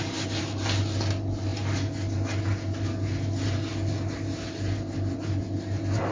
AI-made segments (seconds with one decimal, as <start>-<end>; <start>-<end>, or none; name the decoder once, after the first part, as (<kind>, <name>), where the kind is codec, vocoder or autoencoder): none